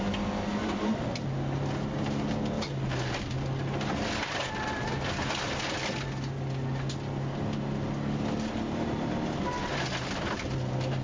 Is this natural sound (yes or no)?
yes